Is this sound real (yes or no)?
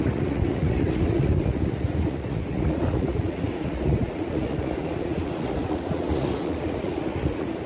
no